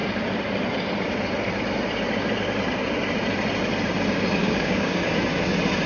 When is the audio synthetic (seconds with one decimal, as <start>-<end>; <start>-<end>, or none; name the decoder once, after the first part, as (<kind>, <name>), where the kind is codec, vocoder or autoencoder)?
4.4-5.1 (codec, DAC)